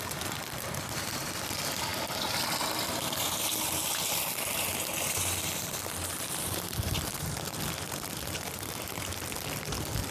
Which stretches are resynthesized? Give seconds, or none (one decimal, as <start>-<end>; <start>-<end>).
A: none